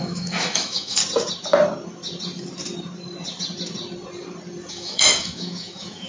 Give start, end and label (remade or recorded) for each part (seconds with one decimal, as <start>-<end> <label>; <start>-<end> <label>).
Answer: 0.0-1.0 remade; 1.0-4.7 recorded; 4.7-6.1 remade